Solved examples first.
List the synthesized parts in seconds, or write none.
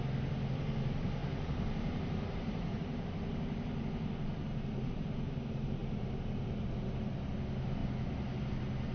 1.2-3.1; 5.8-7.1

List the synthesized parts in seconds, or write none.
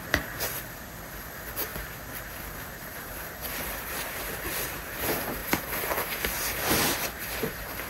0.0-5.4; 7.2-7.9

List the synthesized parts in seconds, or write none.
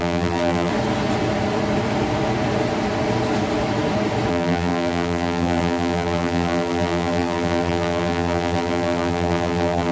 0.0-0.7; 4.3-9.9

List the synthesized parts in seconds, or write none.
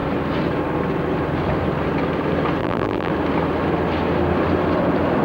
2.6-3.1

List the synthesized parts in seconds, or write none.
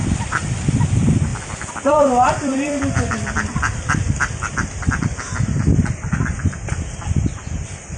1.3-5.6